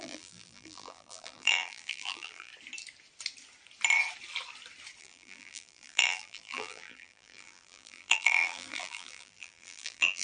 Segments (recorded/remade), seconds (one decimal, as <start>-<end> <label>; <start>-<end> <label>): 0.0-2.5 remade; 2.5-5.0 recorded; 5.0-10.2 remade